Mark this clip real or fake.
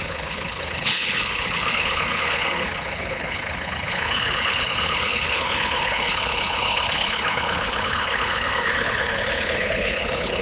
fake